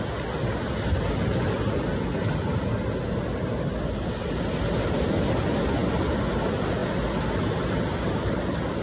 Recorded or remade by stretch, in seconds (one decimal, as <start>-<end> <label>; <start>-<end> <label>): 0.0-8.8 recorded